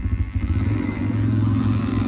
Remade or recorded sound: remade